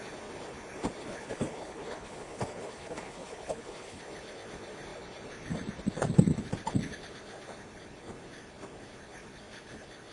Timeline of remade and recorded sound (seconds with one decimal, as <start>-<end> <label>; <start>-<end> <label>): 0.0-1.0 recorded; 1.0-4.0 remade; 4.0-10.1 recorded